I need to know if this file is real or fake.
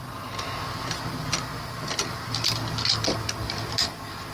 real